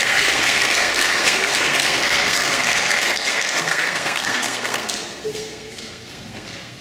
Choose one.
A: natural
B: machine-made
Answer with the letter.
B